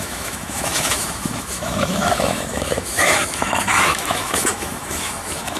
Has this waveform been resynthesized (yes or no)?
yes